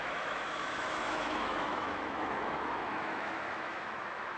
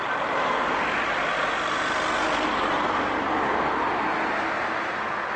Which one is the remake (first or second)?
first